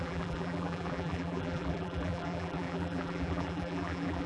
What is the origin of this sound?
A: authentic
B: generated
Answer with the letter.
B